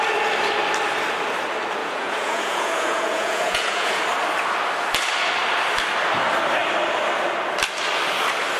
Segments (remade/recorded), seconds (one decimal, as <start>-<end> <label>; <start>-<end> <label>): 0.0-1.8 recorded; 1.8-4.0 remade; 4.0-8.6 recorded